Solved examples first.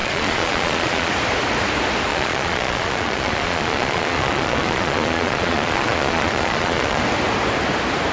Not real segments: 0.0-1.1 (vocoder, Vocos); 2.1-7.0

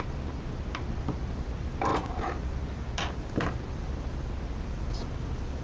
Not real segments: none

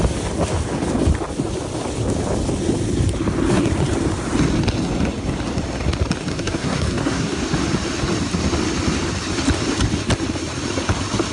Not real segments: 6.3-7.4 (codec, SNAC)

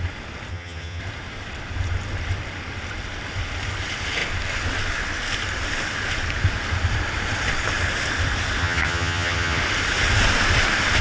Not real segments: 0.5-1.0 (vocoder, HiFi-GAN); 8.6-9.6

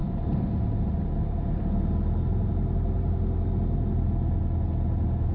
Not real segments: none

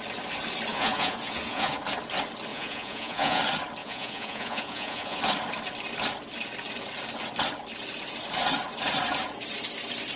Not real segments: 0.7-1.8 (vocoder, Vocos); 2.5-3.4; 3.8-5.2